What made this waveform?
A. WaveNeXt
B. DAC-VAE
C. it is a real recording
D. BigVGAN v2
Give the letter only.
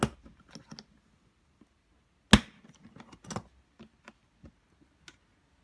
C